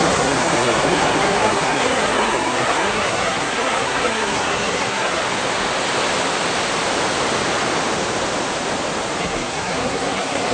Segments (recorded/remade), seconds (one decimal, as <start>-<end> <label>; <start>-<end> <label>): 0.0-5.2 remade; 5.2-9.2 recorded; 9.2-10.5 remade

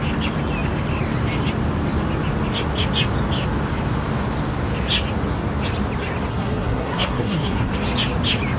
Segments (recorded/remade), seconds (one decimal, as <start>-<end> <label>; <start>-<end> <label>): 0.0-6.3 recorded; 6.3-7.7 remade; 7.7-8.6 recorded

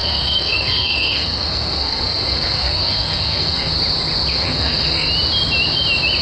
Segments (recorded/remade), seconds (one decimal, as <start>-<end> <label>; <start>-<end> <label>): 0.0-3.7 remade; 3.7-4.3 recorded; 4.3-5.1 remade; 5.1-6.2 recorded

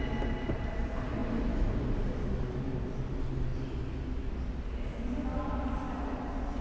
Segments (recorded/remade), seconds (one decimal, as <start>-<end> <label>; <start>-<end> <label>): 0.0-6.6 recorded

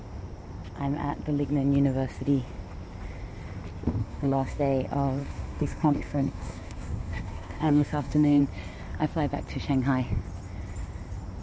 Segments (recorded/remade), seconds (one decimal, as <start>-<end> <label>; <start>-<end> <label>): 0.0-4.0 recorded; 4.0-4.6 remade; 4.6-5.2 recorded; 5.2-8.4 remade; 8.4-11.4 recorded

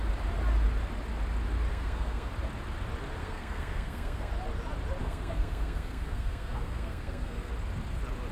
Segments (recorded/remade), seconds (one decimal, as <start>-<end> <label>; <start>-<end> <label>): 0.0-1.7 recorded; 1.7-2.3 remade; 2.3-3.2 recorded; 3.2-4.3 remade; 4.3-5.0 recorded; 5.0-7.5 remade; 7.5-8.3 recorded

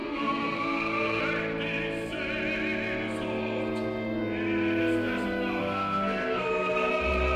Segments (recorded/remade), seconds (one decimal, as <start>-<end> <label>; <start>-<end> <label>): 0.0-1.2 remade; 1.2-5.6 recorded; 5.6-6.9 remade; 6.9-7.4 recorded

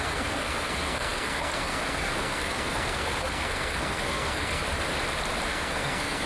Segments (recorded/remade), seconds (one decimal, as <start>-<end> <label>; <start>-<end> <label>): 0.0-4.6 remade; 4.6-5.5 recorded; 5.5-6.3 remade